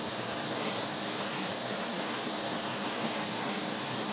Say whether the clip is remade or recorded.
remade